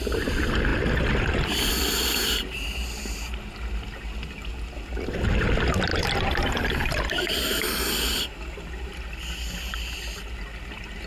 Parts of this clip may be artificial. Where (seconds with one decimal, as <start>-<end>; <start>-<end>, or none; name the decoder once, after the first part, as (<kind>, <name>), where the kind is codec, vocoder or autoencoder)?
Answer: none